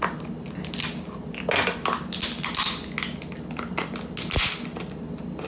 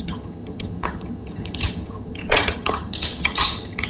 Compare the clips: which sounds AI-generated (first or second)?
second